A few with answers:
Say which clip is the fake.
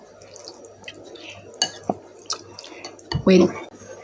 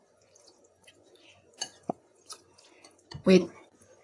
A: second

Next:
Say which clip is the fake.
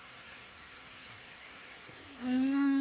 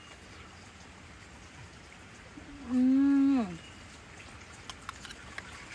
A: first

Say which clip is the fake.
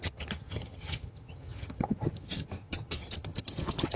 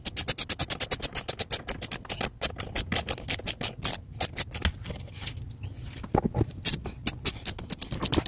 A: first